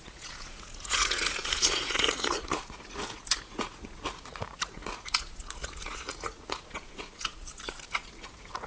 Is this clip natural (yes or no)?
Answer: no